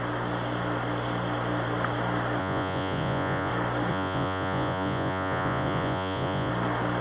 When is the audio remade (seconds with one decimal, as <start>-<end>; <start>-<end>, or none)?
2.4-3.5; 3.9-6.5